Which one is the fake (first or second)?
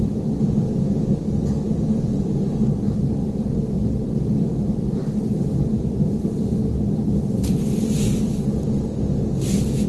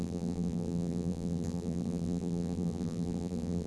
second